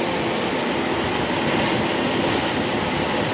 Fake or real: real